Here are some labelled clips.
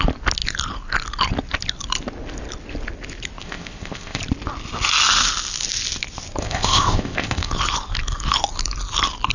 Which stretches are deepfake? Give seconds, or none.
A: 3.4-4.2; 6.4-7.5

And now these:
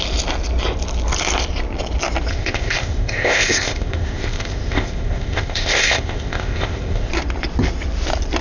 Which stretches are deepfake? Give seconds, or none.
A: 2.3-7.1

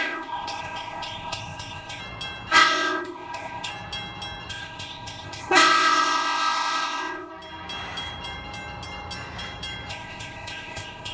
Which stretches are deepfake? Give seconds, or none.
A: 0.0-2.0; 2.5-3.7; 4.5-7.3; 9.9-11.1

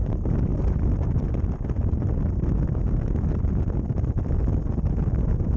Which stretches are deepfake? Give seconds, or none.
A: none

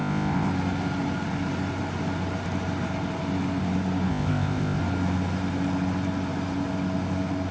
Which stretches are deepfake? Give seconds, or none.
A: 0.0-0.5; 4.1-4.8

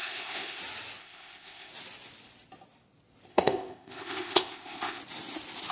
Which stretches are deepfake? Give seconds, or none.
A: 0.0-0.6; 1.0-1.7; 3.3-5.0